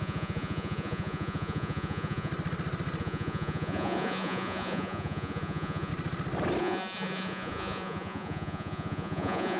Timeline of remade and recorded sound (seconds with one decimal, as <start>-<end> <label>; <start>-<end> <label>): 0.0-2.3 remade; 2.3-3.0 recorded; 3.0-5.9 remade; 5.9-6.6 recorded; 6.6-9.6 remade